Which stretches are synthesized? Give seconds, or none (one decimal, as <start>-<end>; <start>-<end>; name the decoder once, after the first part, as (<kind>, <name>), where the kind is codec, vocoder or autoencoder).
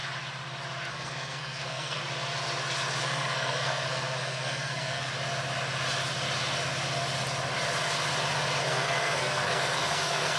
0.9-2.0 (codec, SNAC); 3.0-5.1; 8.6-10.4